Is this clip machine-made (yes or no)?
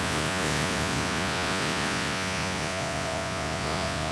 yes